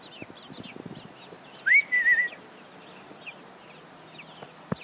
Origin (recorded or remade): recorded